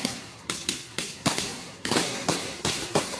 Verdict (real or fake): fake